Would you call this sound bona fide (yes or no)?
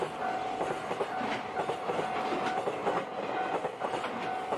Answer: yes